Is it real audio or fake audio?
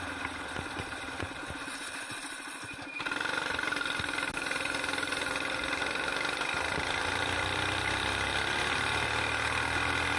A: real